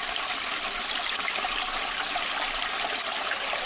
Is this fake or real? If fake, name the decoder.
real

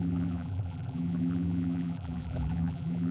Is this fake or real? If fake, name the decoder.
fake, vocoder, BigVGAN v2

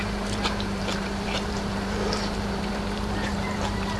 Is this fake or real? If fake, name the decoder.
fake, vocoder, BigVGAN v2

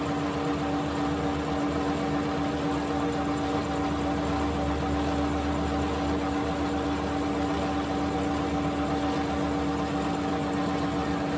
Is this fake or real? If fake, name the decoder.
real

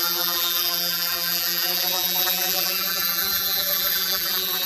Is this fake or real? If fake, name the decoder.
fake, vocoder, BigVGAN v2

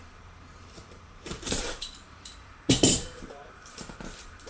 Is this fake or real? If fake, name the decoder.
fake, vocoder, BigVGAN v2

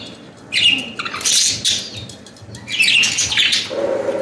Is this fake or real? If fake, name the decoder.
real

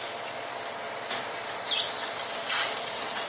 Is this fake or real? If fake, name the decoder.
fake, vocoder, BigVGAN v2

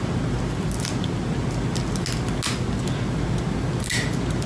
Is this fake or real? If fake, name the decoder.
real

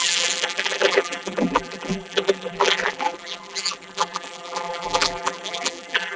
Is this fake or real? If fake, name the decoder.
fake, vocoder, BigVGAN v2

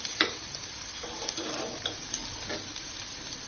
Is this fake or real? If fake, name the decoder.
fake, vocoder, BigVGAN v2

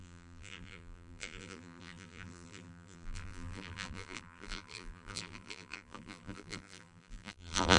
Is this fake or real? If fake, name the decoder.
fake, vocoder, BigVGAN v2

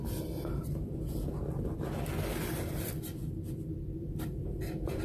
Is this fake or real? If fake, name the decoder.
fake, vocoder, BigVGAN v2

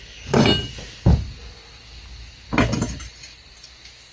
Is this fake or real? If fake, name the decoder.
real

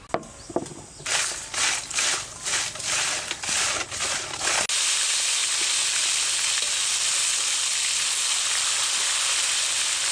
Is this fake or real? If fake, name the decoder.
real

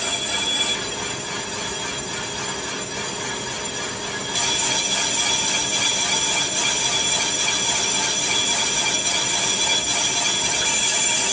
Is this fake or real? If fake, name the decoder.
real